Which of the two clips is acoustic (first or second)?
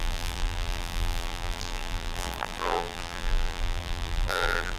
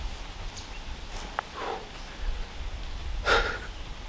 second